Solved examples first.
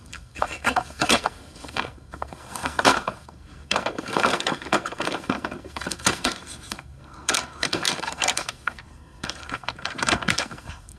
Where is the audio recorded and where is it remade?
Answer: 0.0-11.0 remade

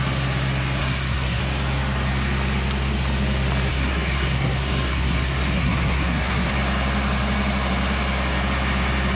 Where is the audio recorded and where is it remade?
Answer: 0.0-0.8 recorded; 0.8-1.4 remade; 1.4-3.7 recorded; 3.7-6.5 remade; 6.5-9.1 recorded